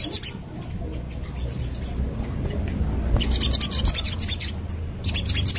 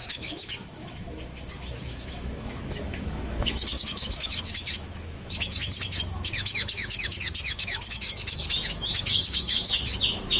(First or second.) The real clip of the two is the first